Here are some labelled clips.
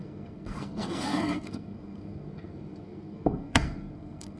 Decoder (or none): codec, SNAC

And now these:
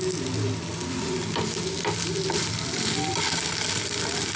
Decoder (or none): none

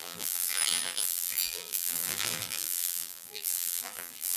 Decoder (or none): vocoder, BigVGAN v2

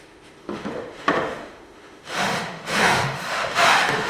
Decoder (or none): autoencoder, DAC-VAE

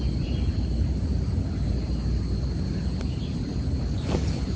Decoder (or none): none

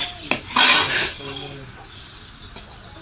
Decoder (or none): none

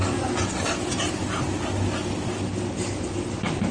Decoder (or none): none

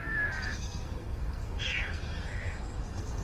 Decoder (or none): codec, SNAC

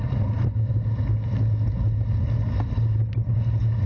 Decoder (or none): none